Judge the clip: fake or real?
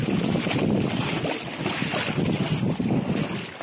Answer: real